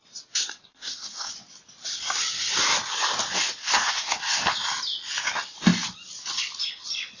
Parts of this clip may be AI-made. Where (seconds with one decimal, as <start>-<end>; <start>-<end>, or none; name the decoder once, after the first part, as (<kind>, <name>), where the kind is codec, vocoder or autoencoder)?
0.7-1.3 (codec, SNAC); 3.6-4.2